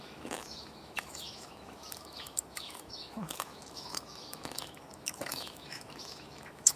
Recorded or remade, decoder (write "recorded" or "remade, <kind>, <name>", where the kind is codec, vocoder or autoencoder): remade, autoencoder, DAC-VAE